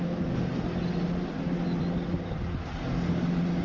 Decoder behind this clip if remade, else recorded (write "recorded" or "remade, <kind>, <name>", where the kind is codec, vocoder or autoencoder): recorded